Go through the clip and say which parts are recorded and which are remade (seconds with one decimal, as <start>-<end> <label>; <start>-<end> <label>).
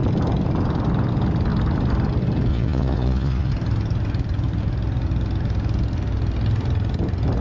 0.0-2.5 recorded; 2.5-3.5 remade; 3.5-7.4 recorded